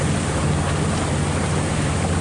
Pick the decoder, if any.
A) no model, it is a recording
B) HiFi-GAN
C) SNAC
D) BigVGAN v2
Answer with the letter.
A